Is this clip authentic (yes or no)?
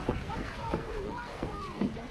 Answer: no